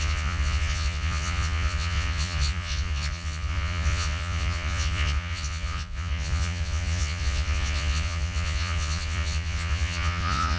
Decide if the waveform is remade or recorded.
remade